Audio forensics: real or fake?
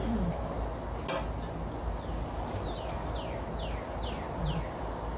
real